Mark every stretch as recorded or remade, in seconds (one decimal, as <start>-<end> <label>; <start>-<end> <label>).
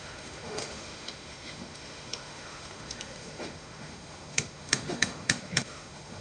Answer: 0.0-6.2 remade